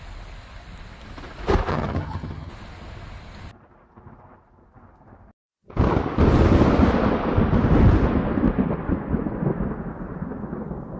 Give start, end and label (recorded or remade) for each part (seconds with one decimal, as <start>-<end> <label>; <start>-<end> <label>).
0.0-1.7 recorded; 1.7-2.5 remade; 2.5-11.0 recorded